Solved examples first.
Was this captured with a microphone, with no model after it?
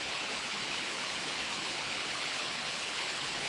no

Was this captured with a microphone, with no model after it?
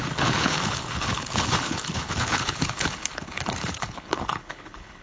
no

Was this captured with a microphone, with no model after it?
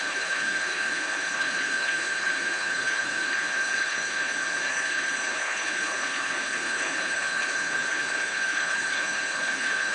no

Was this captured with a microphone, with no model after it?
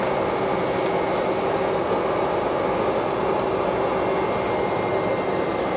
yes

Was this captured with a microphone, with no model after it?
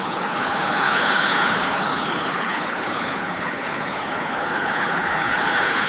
no